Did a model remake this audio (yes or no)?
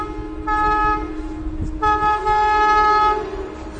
no